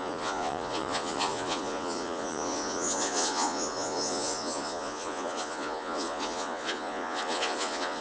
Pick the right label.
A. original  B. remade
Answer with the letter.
B